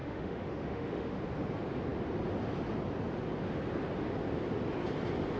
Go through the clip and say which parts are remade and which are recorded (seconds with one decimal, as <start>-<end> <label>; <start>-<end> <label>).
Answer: 0.0-1.2 remade; 1.2-5.4 recorded

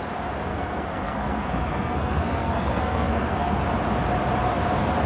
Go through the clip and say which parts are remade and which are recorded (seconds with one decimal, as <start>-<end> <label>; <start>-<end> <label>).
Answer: 0.0-0.5 recorded; 0.5-3.6 remade; 3.6-5.1 recorded

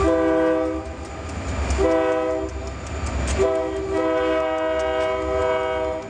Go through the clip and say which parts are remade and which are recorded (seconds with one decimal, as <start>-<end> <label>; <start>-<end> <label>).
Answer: 0.0-6.1 recorded